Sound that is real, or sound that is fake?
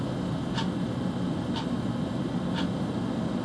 real